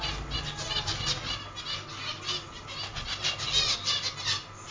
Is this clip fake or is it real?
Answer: real